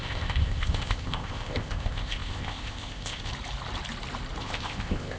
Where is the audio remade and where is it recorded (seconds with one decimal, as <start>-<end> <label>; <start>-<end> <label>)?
0.0-3.3 remade; 3.3-4.4 recorded; 4.4-5.2 remade